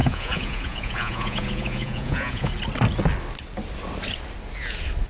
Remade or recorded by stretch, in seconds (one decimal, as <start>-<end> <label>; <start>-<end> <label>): 0.0-2.5 remade; 2.5-5.1 recorded